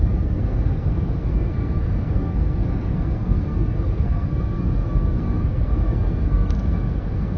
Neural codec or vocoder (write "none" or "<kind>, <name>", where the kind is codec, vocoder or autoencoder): codec, SNAC